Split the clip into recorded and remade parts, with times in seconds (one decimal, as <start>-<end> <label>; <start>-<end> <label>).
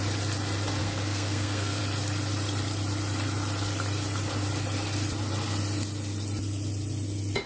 0.0-0.8 recorded; 0.8-1.8 remade; 1.8-7.5 recorded